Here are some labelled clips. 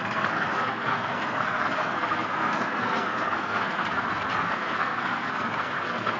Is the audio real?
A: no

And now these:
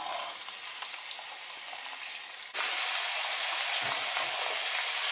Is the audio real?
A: yes